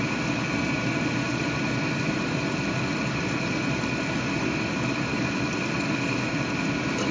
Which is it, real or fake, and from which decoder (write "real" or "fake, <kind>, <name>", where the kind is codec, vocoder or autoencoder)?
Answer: real